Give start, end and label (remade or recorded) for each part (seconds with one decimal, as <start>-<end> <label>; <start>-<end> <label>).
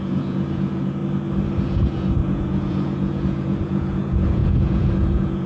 0.0-1.0 remade; 1.0-1.6 recorded; 1.6-5.5 remade